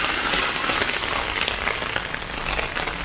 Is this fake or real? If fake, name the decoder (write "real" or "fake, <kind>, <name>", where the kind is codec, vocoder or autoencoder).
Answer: real